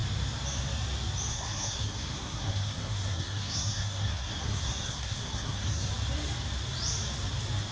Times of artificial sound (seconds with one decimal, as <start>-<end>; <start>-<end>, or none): 1.3-5.9